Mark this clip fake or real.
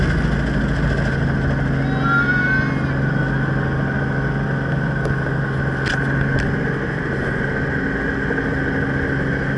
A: real